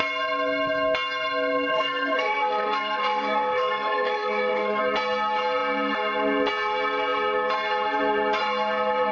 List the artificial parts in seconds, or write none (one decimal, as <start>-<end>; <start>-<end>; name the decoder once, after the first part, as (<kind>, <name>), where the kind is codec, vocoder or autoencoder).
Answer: 1.7-4.8 (codec, SNAC)